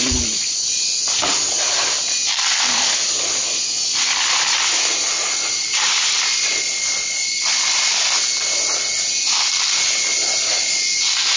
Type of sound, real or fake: real